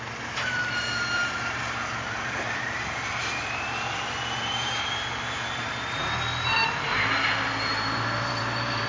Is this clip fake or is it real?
fake